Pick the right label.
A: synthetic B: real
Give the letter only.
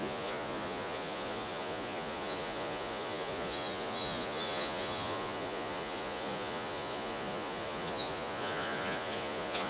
A